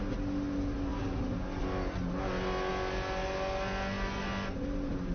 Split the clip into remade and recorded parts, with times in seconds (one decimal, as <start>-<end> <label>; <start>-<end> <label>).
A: 0.0-5.1 recorded